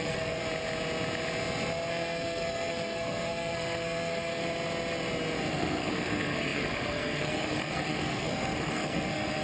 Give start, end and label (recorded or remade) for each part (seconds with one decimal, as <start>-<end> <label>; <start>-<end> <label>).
0.0-0.4 remade; 0.4-1.9 recorded; 1.9-4.4 remade; 4.4-5.5 recorded; 5.5-9.4 remade